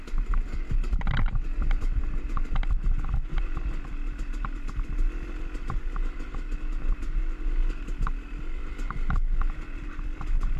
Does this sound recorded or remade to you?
recorded